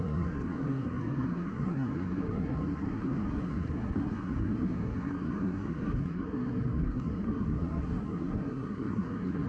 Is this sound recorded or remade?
remade